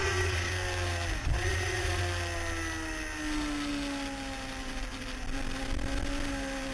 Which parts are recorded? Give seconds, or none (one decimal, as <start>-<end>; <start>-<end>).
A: 0.5-1.2; 2.0-6.7